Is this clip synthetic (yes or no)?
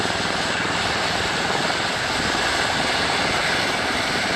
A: yes